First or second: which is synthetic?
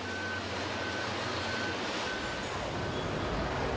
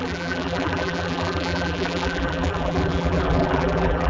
second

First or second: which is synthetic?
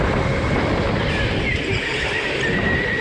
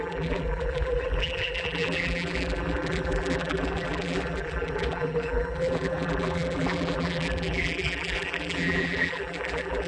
second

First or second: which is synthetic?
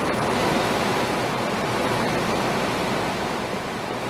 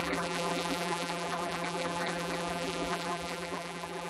second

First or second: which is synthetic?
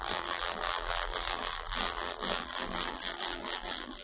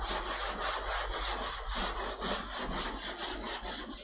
first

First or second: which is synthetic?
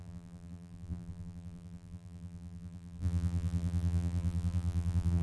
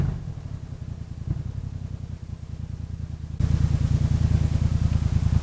first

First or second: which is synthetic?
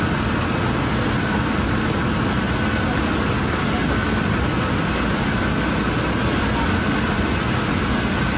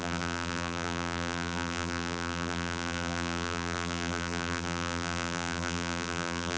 second